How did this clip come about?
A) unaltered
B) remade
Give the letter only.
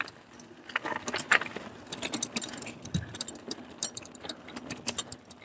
A